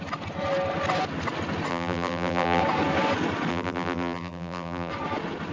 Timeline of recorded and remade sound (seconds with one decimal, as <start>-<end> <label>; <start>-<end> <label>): 0.0-1.7 recorded; 1.7-2.6 remade; 2.6-3.5 recorded; 3.5-4.9 remade; 4.9-5.5 recorded